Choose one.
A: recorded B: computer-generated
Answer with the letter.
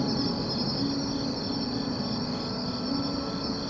A